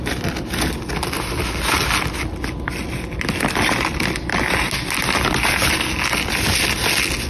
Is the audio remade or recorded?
recorded